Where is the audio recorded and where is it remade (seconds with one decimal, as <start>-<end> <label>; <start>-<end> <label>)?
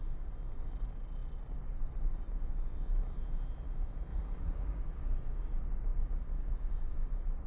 0.0-4.1 recorded; 4.1-4.8 remade; 4.8-7.5 recorded